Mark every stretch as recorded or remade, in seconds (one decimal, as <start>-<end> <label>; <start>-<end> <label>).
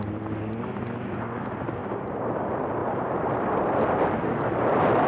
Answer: 0.0-1.8 recorded; 1.8-2.4 remade; 2.4-5.1 recorded